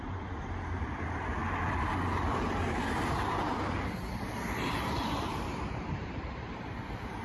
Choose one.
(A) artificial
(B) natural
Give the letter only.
A